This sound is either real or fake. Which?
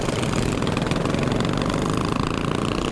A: real